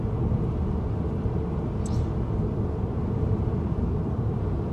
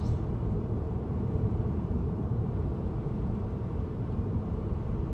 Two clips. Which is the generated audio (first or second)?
second